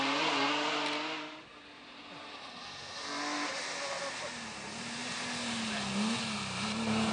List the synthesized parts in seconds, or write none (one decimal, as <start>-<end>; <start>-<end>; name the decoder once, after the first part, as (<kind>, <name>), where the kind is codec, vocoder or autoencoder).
none